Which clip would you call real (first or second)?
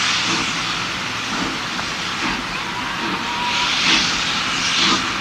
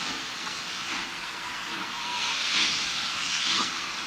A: first